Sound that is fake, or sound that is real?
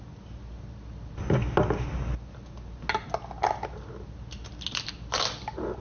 real